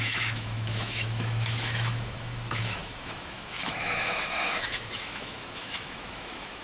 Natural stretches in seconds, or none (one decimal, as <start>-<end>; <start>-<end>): none

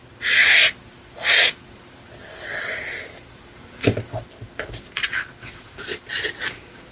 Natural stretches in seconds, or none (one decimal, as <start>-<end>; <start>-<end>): 0.0-6.9

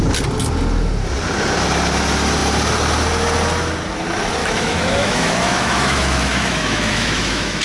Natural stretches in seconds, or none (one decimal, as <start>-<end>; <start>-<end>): 0.0-4.4

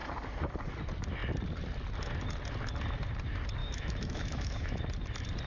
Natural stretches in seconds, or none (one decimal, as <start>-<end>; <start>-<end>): 0.0-3.6; 4.8-5.5

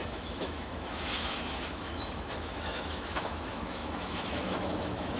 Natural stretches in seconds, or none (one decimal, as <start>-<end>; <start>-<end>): none

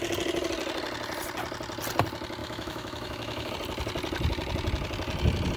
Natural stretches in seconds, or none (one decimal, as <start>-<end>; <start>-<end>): 0.0-2.4; 3.5-5.6

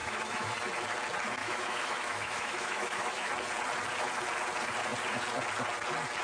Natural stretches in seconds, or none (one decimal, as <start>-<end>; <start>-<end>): 0.5-1.4; 3.3-6.2